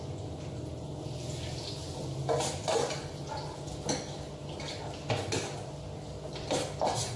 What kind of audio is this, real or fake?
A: real